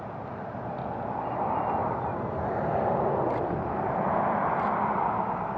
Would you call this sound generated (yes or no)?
no